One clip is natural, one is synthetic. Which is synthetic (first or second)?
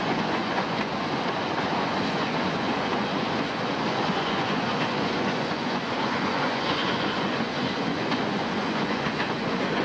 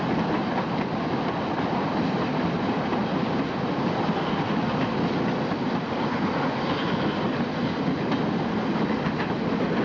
first